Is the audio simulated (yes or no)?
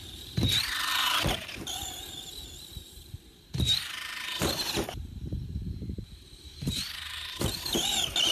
yes